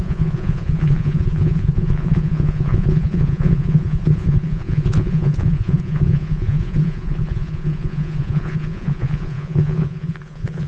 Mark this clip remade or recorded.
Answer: remade